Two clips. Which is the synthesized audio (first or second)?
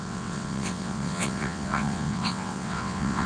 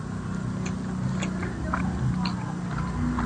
first